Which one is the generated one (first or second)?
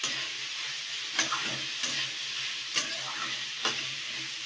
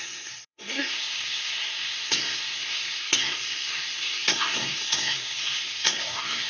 second